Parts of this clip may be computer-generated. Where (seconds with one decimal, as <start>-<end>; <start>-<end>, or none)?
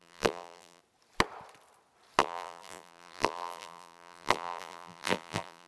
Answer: 0.0-0.8; 2.2-5.7